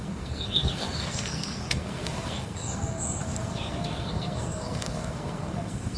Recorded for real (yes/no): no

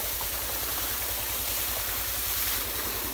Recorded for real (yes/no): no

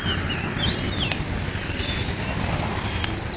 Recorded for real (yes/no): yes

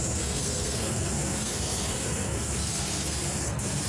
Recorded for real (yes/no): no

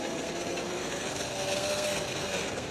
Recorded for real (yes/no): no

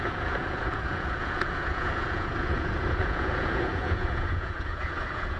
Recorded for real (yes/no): no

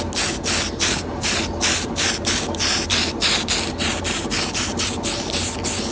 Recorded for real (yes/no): yes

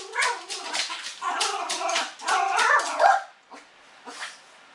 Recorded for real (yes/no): yes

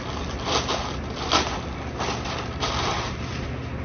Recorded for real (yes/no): yes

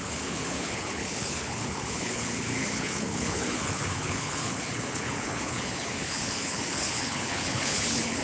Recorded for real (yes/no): no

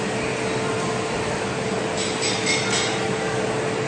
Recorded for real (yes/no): yes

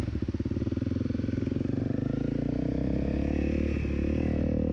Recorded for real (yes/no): yes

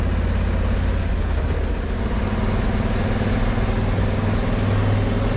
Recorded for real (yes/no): yes